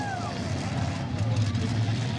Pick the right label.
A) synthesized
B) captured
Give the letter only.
B